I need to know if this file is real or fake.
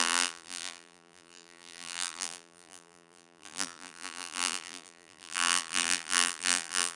fake